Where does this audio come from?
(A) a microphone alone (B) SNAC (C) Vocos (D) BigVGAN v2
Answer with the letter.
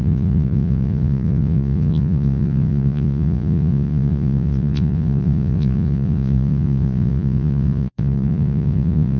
C